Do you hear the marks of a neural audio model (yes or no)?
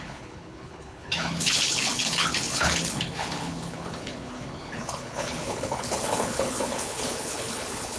yes